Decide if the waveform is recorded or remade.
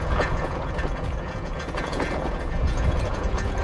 remade